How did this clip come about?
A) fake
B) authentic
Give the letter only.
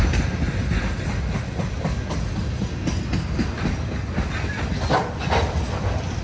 B